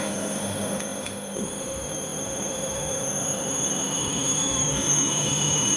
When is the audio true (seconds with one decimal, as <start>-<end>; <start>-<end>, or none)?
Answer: none